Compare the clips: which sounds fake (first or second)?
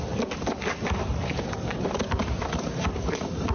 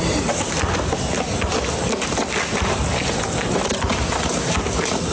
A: first